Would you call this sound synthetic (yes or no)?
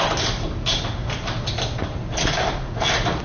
no